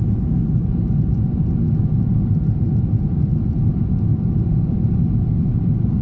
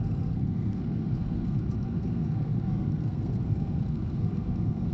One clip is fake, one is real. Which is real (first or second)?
first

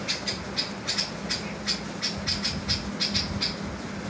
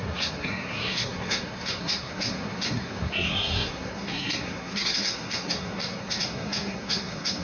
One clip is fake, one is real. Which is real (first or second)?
first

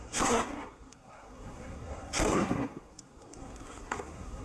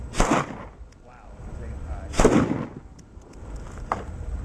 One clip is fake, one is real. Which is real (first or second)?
second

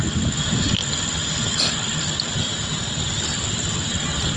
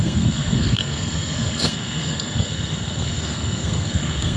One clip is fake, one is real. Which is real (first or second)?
first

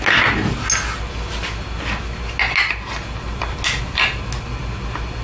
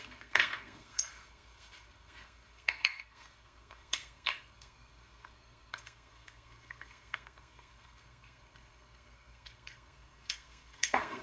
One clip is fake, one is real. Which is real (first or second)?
first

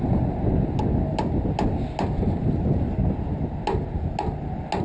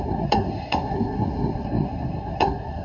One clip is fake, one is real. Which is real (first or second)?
first